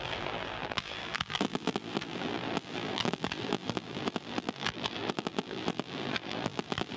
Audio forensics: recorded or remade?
remade